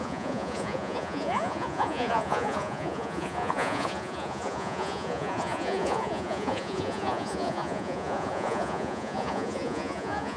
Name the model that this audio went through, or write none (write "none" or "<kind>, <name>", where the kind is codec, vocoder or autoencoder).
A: vocoder, Vocos